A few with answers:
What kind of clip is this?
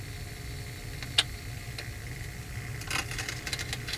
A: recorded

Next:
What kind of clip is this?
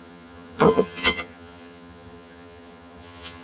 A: remade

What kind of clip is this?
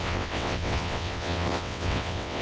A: remade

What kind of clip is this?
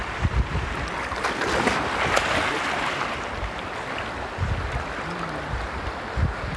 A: recorded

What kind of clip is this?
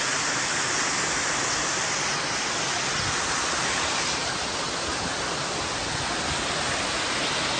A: recorded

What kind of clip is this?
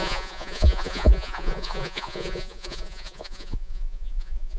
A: remade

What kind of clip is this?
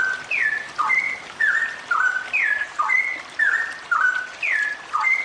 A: recorded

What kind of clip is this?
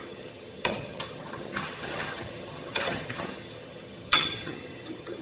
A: remade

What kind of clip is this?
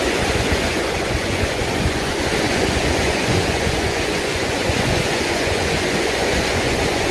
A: remade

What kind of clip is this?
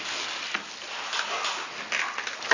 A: recorded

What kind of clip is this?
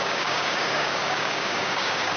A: remade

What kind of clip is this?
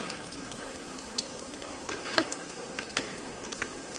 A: remade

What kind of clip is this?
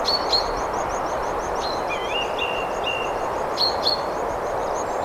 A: recorded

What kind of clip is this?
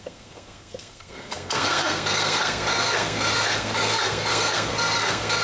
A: remade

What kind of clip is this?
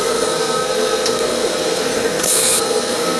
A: remade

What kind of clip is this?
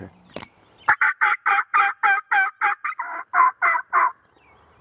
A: recorded